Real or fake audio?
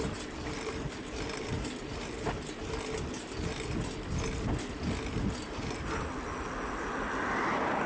real